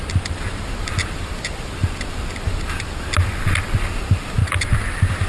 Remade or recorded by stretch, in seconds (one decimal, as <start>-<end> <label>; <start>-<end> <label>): 0.0-4.4 recorded; 4.4-5.3 remade